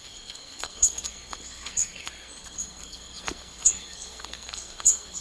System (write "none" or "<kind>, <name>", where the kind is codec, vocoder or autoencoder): codec, SNAC